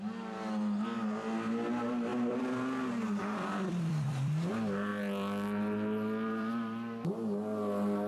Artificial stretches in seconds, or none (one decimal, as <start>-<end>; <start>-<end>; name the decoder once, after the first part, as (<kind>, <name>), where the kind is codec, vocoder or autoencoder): 2.1-4.5 (vocoder, BigVGAN v2); 4.9-7.1